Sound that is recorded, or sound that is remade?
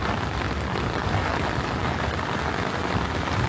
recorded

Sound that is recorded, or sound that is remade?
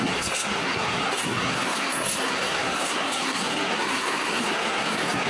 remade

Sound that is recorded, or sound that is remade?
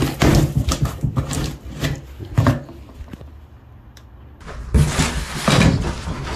recorded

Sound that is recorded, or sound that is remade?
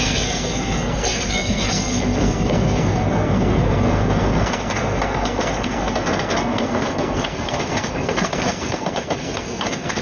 remade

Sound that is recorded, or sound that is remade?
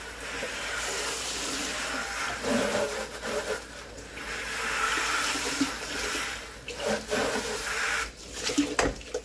recorded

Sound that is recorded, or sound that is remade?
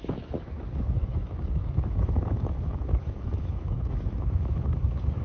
remade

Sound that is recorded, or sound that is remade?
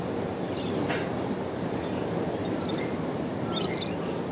recorded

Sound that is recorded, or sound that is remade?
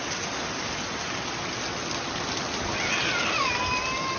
recorded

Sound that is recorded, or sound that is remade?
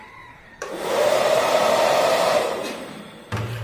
remade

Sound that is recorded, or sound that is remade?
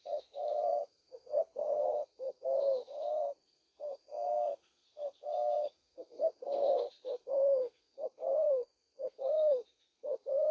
remade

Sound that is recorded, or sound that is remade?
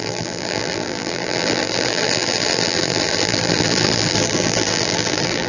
remade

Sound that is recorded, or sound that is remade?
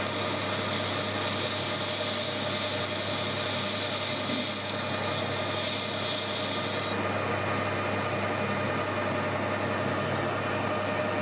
recorded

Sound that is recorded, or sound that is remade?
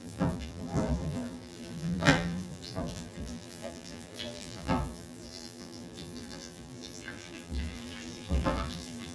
remade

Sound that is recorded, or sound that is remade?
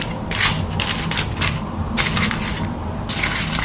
recorded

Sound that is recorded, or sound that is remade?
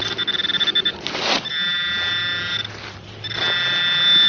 recorded